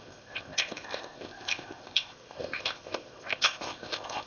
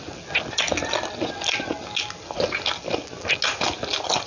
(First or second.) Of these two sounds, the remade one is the first